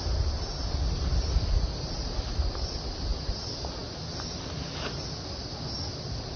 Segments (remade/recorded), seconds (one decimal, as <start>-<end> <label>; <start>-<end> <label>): 0.0-6.4 recorded